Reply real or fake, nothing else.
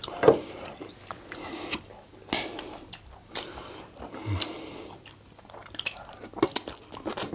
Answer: real